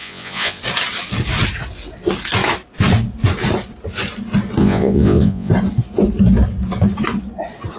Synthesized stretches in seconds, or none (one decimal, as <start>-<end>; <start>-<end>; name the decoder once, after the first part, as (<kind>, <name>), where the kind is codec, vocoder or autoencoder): 0.0-0.6 (vocoder, Vocos); 4.6-5.5